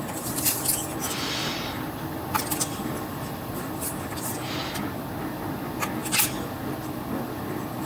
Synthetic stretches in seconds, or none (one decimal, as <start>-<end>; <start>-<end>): 1.0-3.9